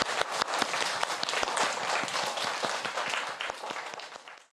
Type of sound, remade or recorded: recorded